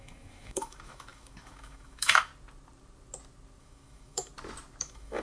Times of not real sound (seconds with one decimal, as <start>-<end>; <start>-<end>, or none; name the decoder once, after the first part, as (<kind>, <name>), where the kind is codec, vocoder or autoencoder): 0.0-2.3 (autoencoder, DAC-VAE); 3.6-4.3; 4.8-5.2